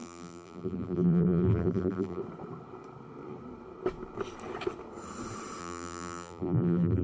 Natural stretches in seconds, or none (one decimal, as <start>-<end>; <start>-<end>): 2.2-5.6